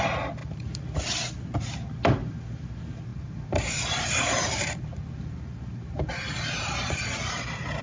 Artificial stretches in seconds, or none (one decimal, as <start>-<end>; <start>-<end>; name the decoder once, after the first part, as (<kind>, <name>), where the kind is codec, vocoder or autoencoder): 0.4-1.0 (vocoder, BigVGAN v2); 3.1-7.8